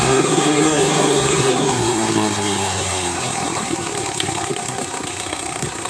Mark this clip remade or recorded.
remade